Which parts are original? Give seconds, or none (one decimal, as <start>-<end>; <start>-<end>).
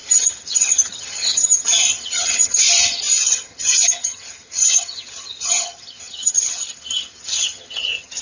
2.6-3.1